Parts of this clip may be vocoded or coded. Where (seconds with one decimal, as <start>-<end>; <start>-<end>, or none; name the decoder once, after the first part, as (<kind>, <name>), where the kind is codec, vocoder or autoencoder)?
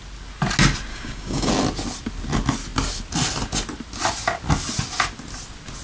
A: 0.9-1.5 (codec, DAC)